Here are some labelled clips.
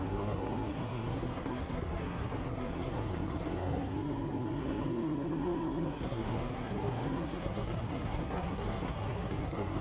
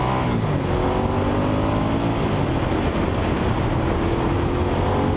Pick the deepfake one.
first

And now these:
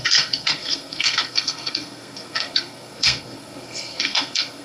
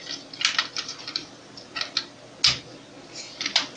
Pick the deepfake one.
first